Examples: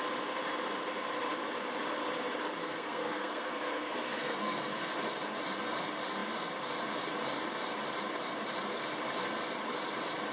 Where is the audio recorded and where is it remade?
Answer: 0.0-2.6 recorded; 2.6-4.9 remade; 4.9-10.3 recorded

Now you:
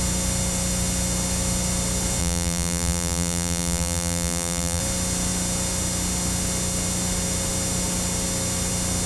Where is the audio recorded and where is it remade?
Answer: 0.0-2.2 recorded; 2.2-4.8 remade; 4.8-9.1 recorded

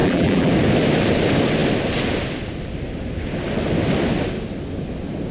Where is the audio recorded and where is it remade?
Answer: 0.0-0.5 remade; 0.5-5.3 recorded

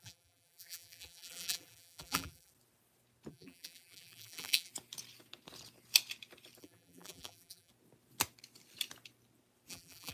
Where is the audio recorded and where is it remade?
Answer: 0.0-2.5 remade; 2.5-3.3 recorded; 3.3-4.7 remade; 4.7-6.6 recorded; 6.6-7.7 remade; 7.7-9.7 recorded; 9.7-10.1 remade

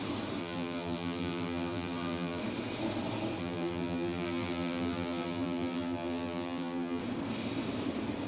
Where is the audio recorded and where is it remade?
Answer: 0.0-0.4 recorded; 0.4-2.4 remade; 2.4-3.4 recorded; 3.4-7.0 remade; 7.0-8.3 recorded

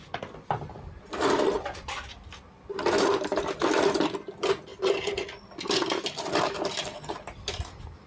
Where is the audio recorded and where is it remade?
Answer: 0.0-2.1 recorded; 2.1-3.4 remade; 3.4-4.7 recorded; 4.7-8.1 remade